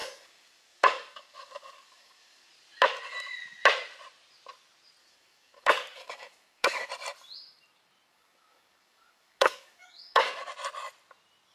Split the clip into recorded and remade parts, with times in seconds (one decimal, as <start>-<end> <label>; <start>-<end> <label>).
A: 0.0-2.5 remade; 2.5-5.0 recorded; 5.0-6.9 remade; 6.9-8.1 recorded; 8.1-10.5 remade; 10.5-11.5 recorded

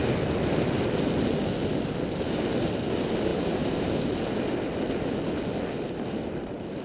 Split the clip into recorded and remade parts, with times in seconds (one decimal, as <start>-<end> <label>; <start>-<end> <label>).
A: 0.0-3.3 recorded; 3.3-4.0 remade; 4.0-6.8 recorded